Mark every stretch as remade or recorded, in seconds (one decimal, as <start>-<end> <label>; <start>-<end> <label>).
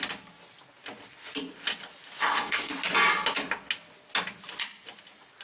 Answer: 0.0-2.2 recorded; 2.2-2.7 remade; 2.7-5.4 recorded